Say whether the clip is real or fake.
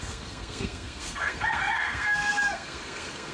fake